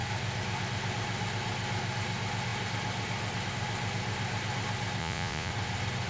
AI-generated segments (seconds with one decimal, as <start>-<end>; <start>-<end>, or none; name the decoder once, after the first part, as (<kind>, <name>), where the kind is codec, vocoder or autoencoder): 5.0-5.5 (vocoder, Vocos)